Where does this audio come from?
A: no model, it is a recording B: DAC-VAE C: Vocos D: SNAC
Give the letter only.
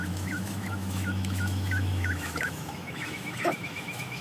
B